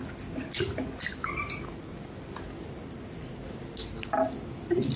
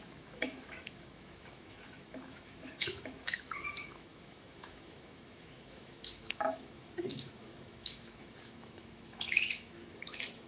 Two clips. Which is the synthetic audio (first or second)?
second